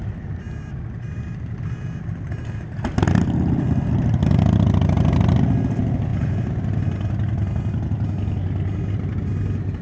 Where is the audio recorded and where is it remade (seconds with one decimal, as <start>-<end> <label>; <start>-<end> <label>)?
0.0-9.8 recorded